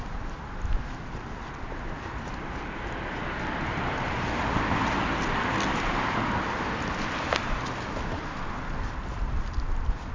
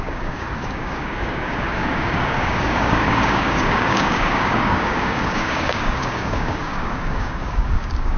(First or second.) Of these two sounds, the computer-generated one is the second